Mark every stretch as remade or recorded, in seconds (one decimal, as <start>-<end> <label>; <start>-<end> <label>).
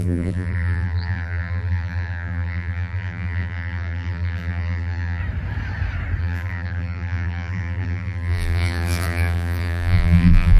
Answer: 0.0-5.2 remade; 5.2-6.2 recorded; 6.2-10.6 remade